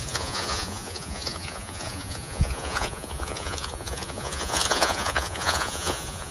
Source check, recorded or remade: remade